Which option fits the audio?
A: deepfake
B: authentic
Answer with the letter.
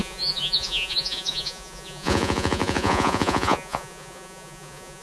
A